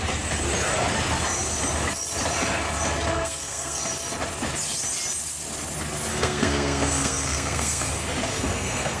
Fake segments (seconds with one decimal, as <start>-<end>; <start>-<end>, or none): 3.1-3.8; 6.1-7.9; 8.3-9.0